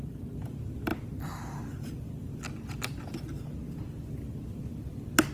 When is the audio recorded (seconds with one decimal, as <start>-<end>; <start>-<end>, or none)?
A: 0.0-5.3